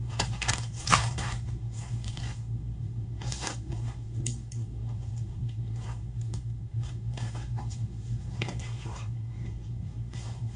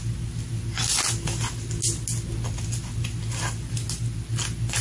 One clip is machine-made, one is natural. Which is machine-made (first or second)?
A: first